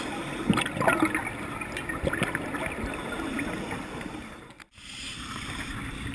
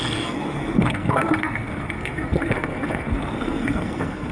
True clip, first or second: first